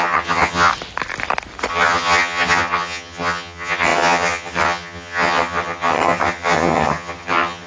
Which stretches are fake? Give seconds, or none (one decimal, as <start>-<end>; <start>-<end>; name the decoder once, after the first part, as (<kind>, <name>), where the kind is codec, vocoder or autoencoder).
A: 0.0-0.7 (vocoder, HiFi-GAN); 1.7-7.7